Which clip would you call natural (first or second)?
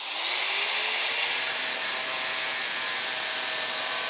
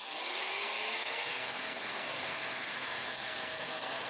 first